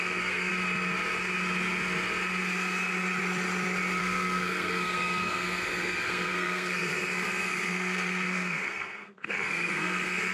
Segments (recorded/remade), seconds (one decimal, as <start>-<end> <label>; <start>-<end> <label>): 0.0-0.5 remade; 0.5-4.0 recorded; 4.0-10.3 remade